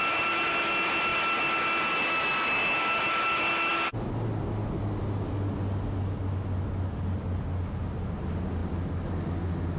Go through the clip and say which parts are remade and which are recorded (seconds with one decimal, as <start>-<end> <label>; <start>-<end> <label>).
0.0-9.8 recorded